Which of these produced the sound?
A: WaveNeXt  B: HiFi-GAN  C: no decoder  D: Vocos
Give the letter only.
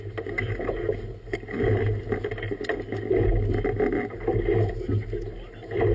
C